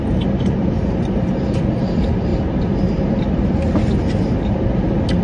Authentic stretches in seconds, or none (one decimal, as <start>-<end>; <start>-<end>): 0.0-5.2